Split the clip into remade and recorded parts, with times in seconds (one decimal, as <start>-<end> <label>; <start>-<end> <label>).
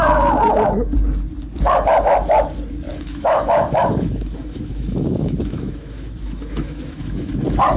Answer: 0.0-2.9 recorded; 2.9-7.3 remade; 7.3-7.8 recorded